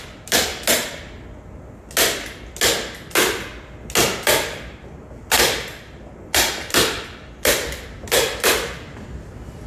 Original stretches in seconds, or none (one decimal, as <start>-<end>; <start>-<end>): 0.5-4.8